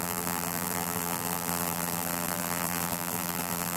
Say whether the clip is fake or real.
fake